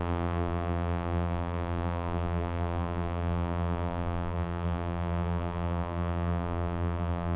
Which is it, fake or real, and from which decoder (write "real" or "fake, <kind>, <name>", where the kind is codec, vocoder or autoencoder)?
fake, vocoder, BigVGAN v2